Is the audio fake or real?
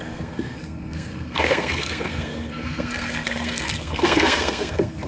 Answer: fake